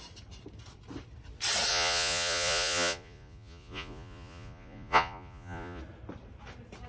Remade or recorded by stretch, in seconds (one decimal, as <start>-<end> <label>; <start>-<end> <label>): 0.0-1.7 recorded; 1.7-5.8 remade; 5.8-6.9 recorded